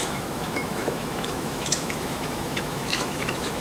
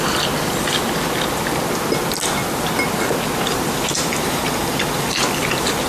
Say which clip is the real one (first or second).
second